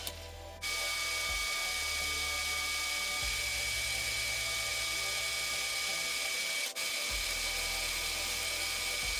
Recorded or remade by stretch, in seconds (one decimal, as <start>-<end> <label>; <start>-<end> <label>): 0.0-9.2 recorded

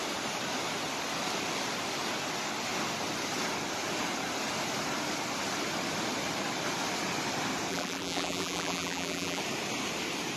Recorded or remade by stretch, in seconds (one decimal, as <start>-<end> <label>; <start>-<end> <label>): 0.0-7.7 recorded; 7.7-9.4 remade; 9.4-10.4 recorded